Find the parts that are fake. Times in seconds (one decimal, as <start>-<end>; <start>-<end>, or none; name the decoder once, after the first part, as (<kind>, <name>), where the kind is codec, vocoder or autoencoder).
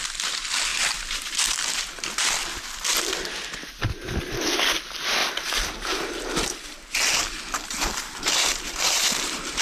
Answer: 5.2-9.6 (vocoder, BigVGAN v2)